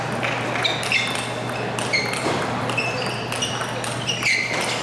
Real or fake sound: real